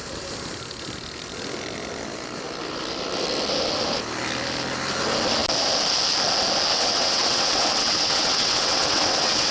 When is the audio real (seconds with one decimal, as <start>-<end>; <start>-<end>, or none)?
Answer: 0.0-6.7